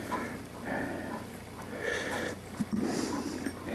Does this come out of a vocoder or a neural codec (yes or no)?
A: no